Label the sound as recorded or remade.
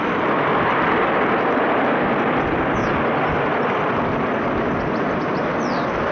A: recorded